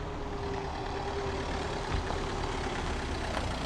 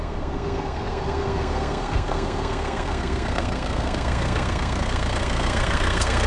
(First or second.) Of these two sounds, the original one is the first